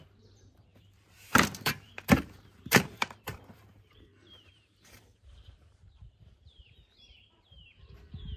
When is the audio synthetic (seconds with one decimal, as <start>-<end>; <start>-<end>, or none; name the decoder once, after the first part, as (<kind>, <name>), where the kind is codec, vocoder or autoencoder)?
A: 0.0-8.4 (vocoder, BigVGAN v2)